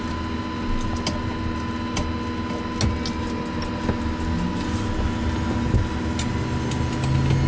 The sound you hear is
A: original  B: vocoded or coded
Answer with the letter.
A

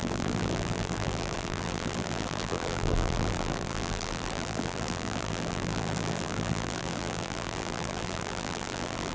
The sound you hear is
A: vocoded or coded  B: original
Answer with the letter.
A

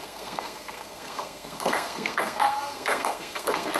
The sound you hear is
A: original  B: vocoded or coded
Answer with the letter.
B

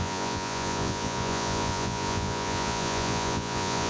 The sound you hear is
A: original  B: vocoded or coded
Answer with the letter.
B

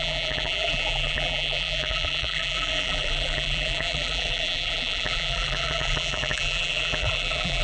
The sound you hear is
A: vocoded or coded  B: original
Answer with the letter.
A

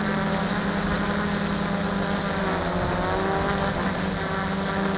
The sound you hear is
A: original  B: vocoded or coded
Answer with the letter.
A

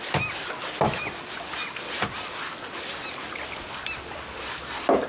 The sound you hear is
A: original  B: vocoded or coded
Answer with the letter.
A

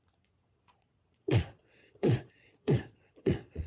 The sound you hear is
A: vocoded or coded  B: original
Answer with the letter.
A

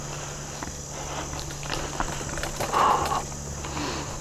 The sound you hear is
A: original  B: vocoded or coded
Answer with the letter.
A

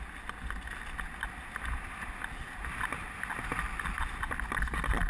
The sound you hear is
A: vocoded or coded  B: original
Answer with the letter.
B